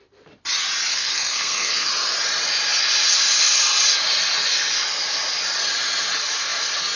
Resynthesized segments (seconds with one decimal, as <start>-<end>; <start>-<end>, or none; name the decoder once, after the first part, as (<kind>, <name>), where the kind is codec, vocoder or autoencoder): 0.9-1.9 (codec, SNAC)